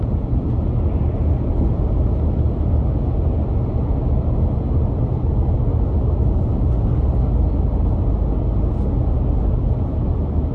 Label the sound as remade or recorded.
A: recorded